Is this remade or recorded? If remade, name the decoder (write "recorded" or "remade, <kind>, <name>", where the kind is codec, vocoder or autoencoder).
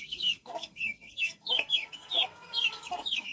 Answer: remade, codec, SNAC